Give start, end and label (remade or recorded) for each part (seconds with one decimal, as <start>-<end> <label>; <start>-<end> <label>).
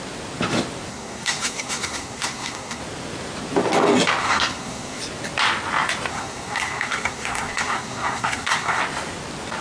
0.0-0.9 recorded; 0.9-2.8 remade; 2.8-4.2 recorded; 4.2-5.0 remade; 5.0-6.1 recorded; 6.1-8.8 remade; 8.8-9.6 recorded